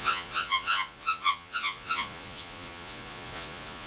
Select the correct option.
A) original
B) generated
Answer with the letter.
B